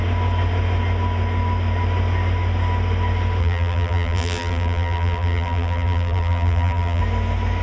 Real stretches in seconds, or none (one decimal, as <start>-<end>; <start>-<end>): 0.0-3.4; 7.0-7.6